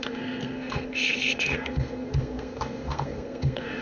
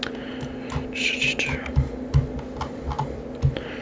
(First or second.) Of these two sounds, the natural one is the second